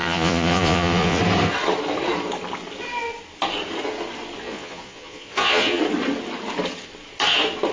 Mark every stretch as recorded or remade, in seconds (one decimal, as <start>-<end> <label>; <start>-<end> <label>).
0.0-1.2 remade; 1.2-4.4 recorded; 4.4-5.8 remade; 5.8-7.7 recorded